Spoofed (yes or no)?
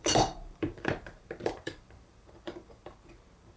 yes